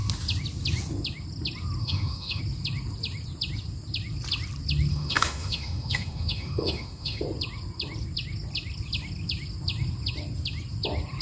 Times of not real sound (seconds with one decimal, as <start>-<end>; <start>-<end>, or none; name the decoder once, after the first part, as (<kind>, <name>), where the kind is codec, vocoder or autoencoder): 1.8-2.4 (autoencoder, DAC-VAE); 4.9-7.2